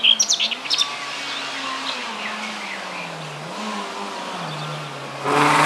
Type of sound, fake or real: real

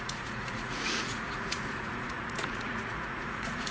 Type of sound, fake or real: fake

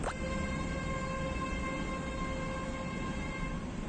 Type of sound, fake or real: real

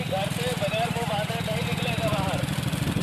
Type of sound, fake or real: real